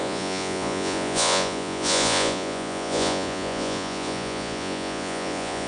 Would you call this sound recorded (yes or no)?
no